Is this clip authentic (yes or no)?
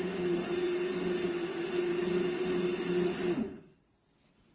yes